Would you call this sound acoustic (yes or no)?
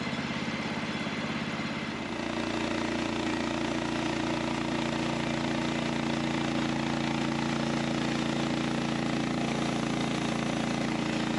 yes